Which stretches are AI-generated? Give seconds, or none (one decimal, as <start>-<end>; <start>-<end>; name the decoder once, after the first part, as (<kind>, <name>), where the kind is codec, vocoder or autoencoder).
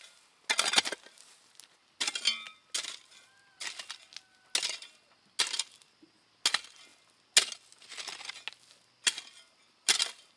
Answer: none